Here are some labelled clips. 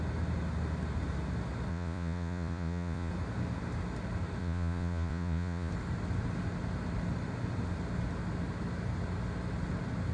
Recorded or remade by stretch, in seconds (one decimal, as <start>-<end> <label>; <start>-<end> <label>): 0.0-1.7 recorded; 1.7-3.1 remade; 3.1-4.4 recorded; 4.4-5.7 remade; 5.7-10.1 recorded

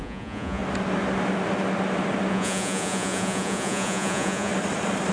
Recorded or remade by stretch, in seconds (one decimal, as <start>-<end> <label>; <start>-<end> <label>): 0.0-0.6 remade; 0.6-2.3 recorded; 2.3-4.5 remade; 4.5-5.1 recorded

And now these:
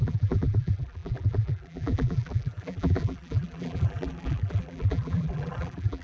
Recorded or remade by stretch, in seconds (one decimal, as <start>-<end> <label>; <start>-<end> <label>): 0.0-6.0 remade